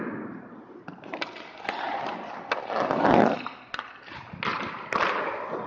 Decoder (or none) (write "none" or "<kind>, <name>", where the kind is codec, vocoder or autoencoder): none